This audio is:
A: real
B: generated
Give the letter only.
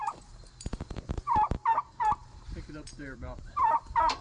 B